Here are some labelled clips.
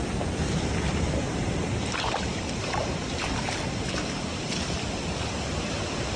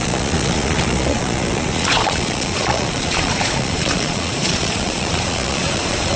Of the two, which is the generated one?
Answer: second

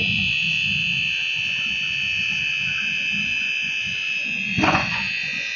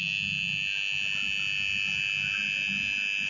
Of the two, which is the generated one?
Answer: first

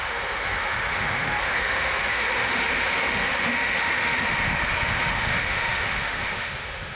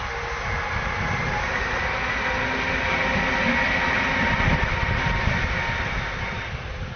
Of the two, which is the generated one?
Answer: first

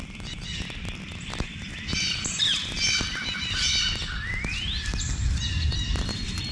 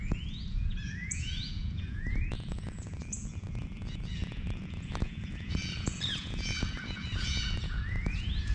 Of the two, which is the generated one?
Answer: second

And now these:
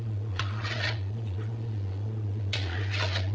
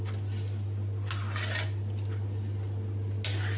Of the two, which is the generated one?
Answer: first